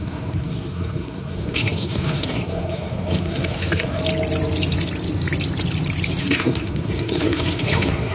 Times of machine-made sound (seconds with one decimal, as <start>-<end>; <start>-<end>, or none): 0.0-4.0; 6.2-8.1